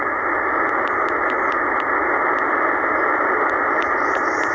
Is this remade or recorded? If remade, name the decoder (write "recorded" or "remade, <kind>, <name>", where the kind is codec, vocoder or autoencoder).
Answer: recorded